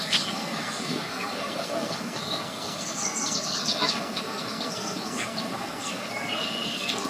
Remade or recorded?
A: remade